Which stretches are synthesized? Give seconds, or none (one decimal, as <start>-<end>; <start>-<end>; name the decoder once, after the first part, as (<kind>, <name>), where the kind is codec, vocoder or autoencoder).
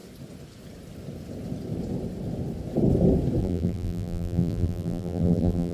3.4-5.7 (vocoder, BigVGAN v2)